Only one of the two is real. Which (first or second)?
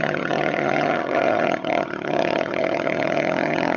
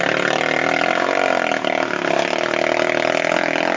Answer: second